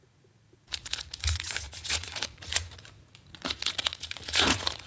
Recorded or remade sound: remade